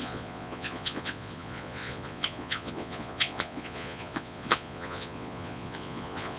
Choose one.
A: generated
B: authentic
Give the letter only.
A